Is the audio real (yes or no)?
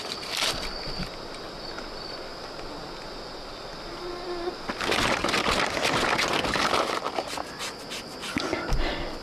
yes